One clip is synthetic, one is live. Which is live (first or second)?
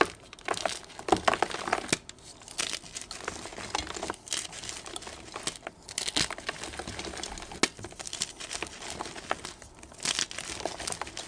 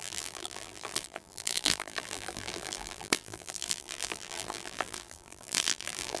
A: first